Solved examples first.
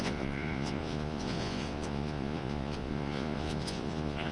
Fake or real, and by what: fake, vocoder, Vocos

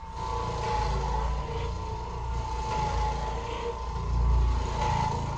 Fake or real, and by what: real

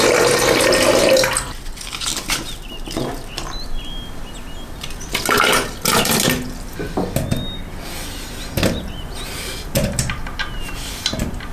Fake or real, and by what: real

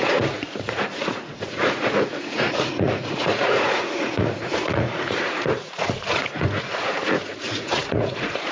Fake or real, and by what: fake, vocoder, Vocos